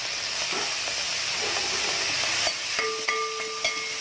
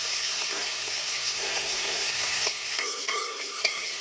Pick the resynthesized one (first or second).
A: second